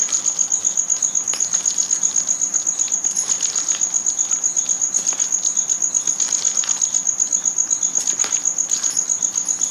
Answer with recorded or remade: recorded